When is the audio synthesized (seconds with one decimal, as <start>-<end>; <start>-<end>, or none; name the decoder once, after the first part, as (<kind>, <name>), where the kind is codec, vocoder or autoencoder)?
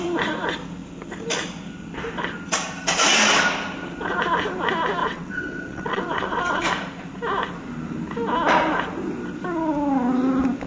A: 5.0-6.6 (vocoder, WaveNeXt)